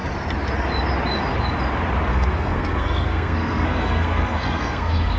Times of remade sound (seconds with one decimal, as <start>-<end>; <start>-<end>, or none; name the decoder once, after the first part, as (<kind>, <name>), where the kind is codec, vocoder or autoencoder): 2.1-5.2 (codec, SNAC)